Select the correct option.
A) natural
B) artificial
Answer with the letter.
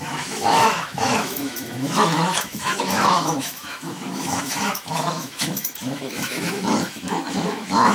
B